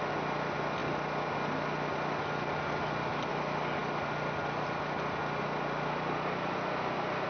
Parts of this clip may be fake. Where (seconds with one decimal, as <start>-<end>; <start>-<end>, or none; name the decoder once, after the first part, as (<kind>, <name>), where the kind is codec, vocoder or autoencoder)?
none